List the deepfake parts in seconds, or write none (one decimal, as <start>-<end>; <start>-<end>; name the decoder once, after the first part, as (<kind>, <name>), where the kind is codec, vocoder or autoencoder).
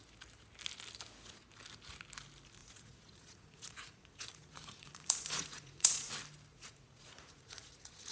2.6-6.1 (vocoder, Vocos); 6.5-8.1